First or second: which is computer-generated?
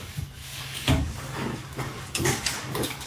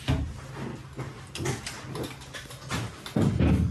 first